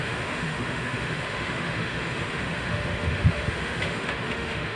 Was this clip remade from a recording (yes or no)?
yes